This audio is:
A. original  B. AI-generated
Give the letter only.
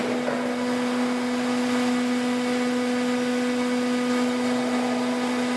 A